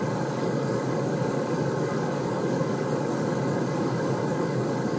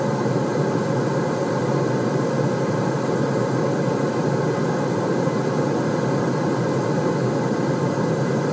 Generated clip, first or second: first